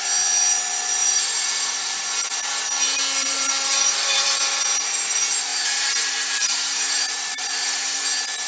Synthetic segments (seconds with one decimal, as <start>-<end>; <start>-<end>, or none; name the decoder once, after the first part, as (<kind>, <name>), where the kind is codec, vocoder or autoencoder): 1.0-2.0 (vocoder, BigVGAN v2); 3.2-4.4; 5.5-8.0